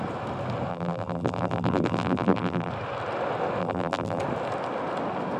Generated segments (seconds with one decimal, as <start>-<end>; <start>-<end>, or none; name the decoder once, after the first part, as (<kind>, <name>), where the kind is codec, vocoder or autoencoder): 0.7-2.7 (vocoder, BigVGAN v2); 3.6-4.2